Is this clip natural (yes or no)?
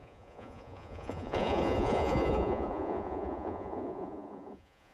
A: no